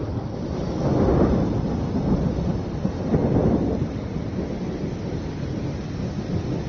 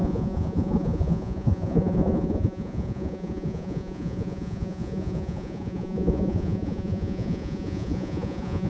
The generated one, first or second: second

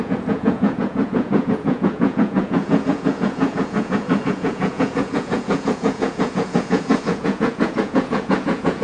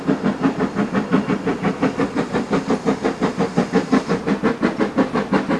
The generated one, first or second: first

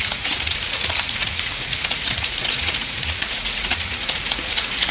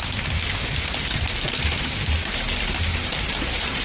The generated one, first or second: first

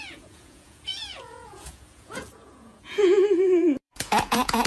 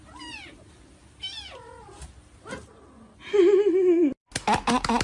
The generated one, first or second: first